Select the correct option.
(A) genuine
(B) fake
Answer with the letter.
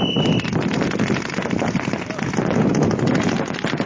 A